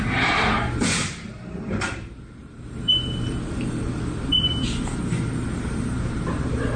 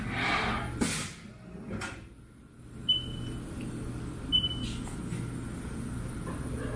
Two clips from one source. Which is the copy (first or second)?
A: first